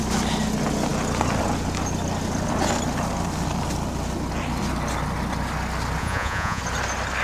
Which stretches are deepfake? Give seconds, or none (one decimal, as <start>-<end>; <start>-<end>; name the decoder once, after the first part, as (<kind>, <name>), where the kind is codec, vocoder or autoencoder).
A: 6.0-6.6 (vocoder, Vocos)